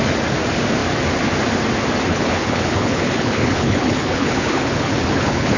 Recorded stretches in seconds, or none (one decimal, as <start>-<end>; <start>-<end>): 0.0-2.1